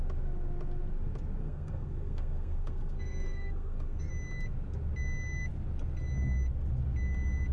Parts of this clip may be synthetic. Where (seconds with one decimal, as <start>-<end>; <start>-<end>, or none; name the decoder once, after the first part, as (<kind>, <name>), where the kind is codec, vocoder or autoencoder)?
1.4-4.1 (codec, SNAC)